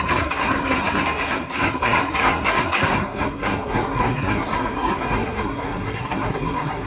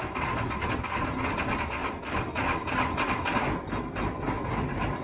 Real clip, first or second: second